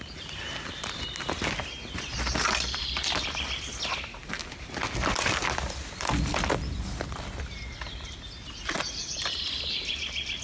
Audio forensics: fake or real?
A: real